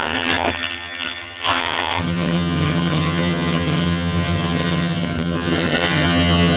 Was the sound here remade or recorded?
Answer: remade